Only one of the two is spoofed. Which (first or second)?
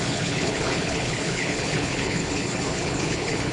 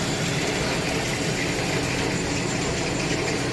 first